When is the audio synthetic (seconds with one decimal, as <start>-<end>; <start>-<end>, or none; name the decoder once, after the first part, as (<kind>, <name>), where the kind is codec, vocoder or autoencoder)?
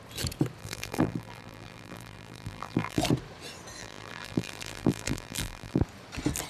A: 0.6-3.0 (vocoder, BigVGAN v2); 3.8-5.8